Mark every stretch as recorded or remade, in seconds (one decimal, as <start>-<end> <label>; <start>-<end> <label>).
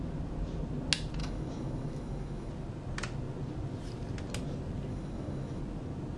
0.0-1.2 recorded; 1.2-2.5 remade; 2.5-4.9 recorded; 4.9-5.6 remade; 5.6-6.2 recorded